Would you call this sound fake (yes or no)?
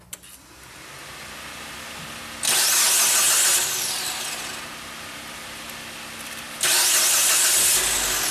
no